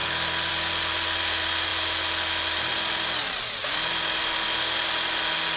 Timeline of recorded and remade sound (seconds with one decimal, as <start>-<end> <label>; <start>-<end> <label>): 0.0-5.6 recorded